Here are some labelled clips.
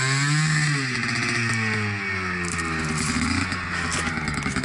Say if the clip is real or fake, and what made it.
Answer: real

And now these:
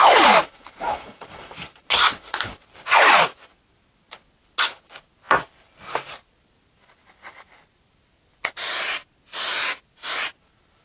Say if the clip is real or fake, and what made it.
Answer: real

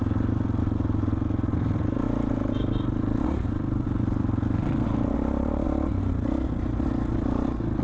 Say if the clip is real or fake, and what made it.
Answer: real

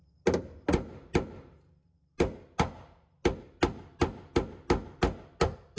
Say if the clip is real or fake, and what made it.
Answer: real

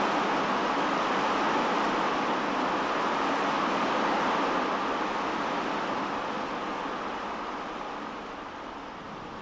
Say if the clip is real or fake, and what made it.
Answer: real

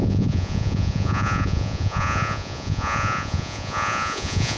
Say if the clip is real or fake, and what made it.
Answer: fake, vocoder, Vocos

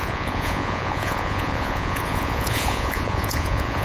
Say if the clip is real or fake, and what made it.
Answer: fake, vocoder, Vocos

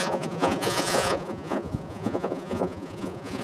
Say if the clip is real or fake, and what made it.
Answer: fake, vocoder, Vocos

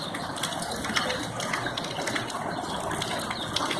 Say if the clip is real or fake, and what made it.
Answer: real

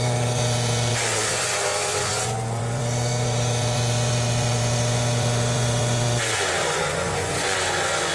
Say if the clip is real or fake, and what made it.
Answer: fake, vocoder, Vocos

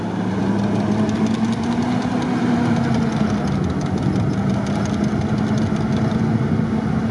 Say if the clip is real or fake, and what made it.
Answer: real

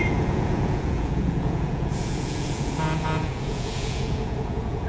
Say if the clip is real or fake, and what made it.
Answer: fake, vocoder, Vocos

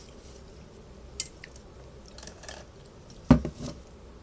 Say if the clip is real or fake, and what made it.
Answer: real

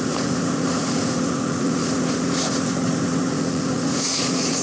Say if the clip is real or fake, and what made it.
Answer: fake, vocoder, Vocos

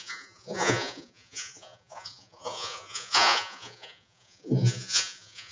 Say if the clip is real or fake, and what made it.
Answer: fake, vocoder, Vocos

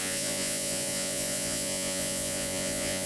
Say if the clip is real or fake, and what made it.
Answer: fake, vocoder, Vocos